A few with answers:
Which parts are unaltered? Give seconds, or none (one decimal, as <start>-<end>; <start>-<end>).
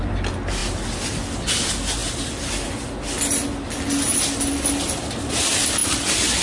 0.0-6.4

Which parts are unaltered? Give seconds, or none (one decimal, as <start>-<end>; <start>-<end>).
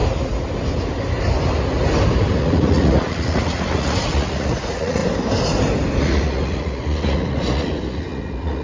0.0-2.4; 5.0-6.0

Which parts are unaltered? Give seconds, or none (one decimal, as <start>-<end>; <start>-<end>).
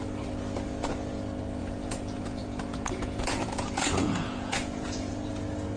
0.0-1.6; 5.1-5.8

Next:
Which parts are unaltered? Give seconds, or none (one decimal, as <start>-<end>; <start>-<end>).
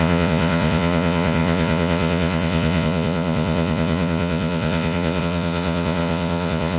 none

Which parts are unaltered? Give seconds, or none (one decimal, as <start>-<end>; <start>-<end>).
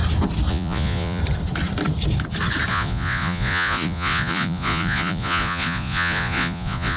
0.0-0.5; 1.2-2.7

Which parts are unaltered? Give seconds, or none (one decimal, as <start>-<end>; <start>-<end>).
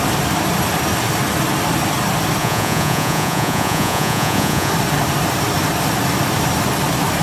0.0-2.4; 4.7-7.2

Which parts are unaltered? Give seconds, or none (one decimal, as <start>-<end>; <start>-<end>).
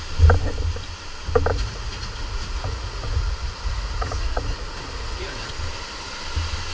0.0-1.5; 5.5-6.7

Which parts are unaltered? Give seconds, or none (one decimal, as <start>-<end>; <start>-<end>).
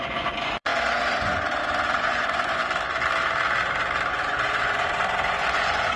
2.6-4.1